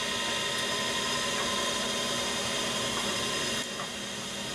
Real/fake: real